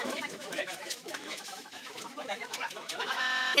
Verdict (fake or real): fake